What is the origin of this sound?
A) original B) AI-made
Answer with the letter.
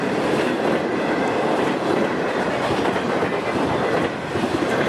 B